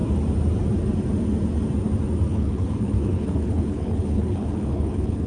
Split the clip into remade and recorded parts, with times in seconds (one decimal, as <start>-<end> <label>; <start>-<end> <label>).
0.0-2.3 recorded; 2.3-5.3 remade